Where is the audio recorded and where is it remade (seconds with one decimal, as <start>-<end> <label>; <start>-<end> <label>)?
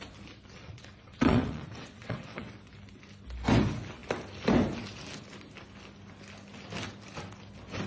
0.0-0.6 recorded; 0.6-2.5 remade; 2.5-7.9 recorded